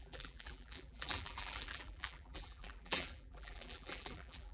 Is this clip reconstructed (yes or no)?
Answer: yes